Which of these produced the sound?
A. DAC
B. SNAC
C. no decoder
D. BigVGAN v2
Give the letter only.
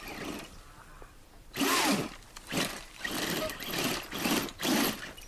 C